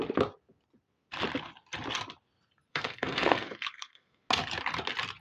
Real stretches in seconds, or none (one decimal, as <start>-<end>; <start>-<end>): 0.0-2.7; 4.2-5.2